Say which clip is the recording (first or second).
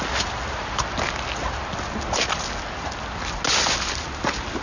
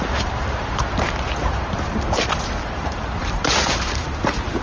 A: first